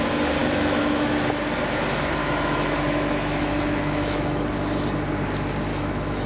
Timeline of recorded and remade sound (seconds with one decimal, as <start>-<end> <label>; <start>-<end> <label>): 0.0-0.4 recorded; 0.4-1.1 remade; 1.1-2.2 recorded; 2.2-4.4 remade; 4.4-5.7 recorded; 5.7-6.3 remade